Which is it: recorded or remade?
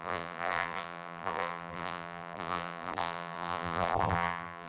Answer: remade